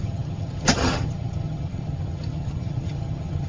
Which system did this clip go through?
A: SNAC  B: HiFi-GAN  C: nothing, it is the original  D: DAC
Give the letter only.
B